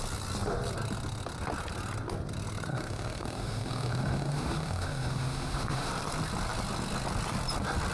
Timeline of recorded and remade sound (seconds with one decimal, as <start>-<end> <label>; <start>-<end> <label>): 0.0-2.7 recorded; 2.7-5.9 remade; 5.9-7.9 recorded